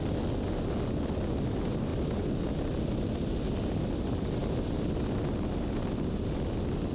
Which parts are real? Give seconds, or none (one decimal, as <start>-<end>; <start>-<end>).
0.0-6.9